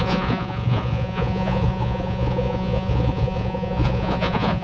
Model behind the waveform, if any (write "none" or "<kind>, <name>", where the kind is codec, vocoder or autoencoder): vocoder, Vocos